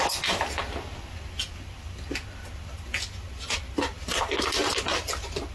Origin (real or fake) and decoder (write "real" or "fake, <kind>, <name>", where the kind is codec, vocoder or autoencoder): real